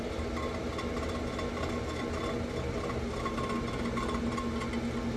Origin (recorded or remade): recorded